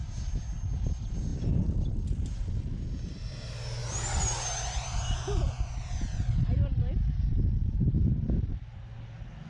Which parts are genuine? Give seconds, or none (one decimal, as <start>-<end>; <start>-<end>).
0.0-9.5